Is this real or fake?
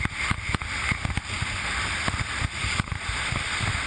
real